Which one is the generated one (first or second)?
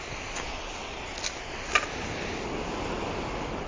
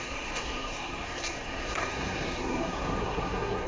second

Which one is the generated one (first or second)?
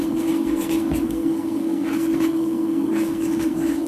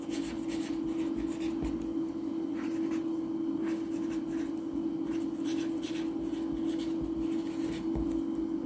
first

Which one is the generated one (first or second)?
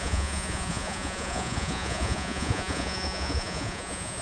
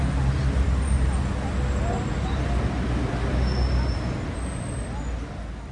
first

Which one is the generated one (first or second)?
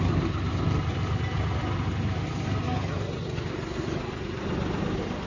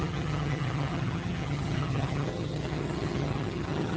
second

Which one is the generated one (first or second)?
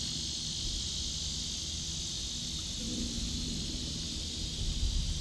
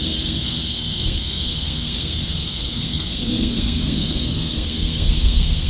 second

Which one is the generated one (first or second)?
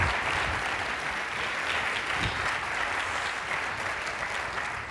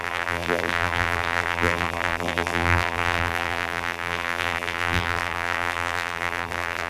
second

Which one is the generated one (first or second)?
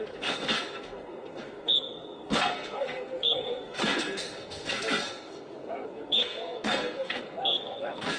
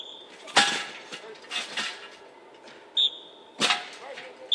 first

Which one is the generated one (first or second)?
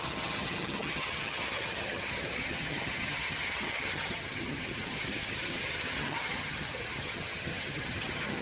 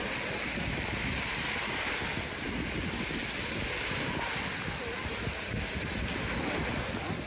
first